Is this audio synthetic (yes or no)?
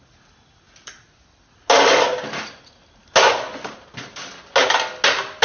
no